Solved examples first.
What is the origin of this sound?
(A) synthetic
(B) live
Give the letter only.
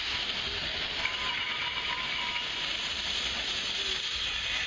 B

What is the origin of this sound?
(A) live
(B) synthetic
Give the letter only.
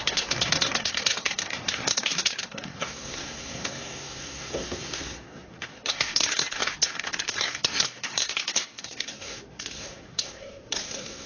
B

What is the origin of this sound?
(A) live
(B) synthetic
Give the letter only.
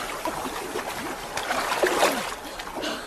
A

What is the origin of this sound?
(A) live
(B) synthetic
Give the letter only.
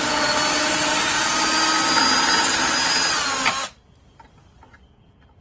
A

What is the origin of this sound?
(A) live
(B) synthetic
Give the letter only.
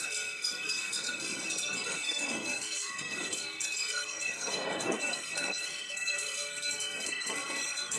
B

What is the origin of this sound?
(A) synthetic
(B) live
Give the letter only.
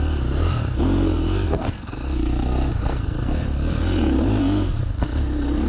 A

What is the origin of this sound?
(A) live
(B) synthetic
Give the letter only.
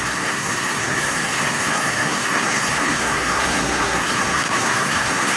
B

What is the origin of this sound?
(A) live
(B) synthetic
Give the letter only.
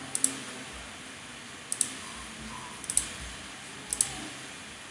A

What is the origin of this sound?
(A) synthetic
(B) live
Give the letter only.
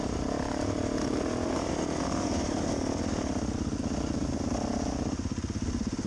B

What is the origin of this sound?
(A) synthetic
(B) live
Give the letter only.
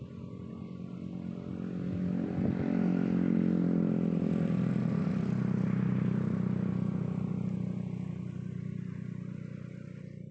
B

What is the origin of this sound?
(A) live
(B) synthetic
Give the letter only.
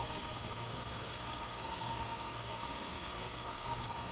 B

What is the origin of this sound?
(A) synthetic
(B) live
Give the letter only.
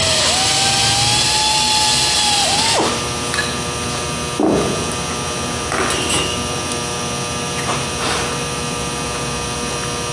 B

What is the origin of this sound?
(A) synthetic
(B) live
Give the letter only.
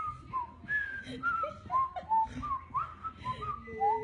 B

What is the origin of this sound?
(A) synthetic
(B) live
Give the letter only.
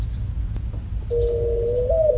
B